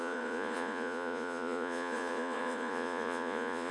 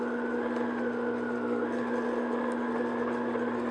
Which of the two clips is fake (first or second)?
first